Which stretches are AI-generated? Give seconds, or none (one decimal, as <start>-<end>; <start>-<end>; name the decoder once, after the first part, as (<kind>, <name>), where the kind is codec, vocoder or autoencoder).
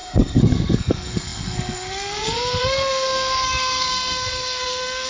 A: 0.0-5.1 (codec, SNAC)